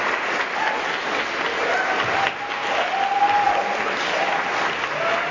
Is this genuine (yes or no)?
yes